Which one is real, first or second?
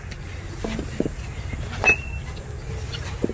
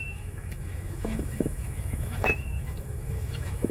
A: first